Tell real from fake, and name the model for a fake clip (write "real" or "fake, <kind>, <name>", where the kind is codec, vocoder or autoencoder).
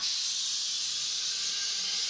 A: real